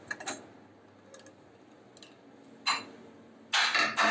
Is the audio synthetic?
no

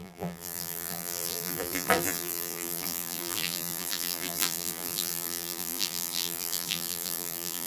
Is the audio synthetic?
yes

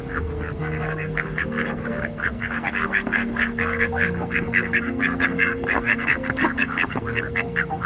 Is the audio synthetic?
yes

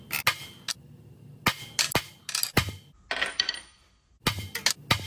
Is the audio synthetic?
no